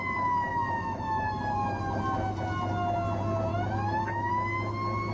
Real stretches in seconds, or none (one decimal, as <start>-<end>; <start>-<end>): 0.0-0.5; 2.0-3.5; 4.3-5.1